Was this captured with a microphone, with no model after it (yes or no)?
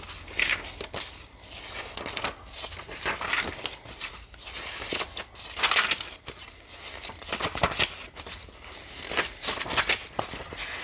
yes